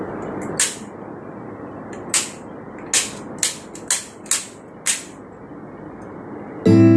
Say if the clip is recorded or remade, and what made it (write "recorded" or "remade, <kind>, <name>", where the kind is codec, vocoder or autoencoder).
recorded